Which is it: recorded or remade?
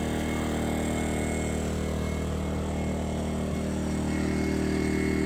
recorded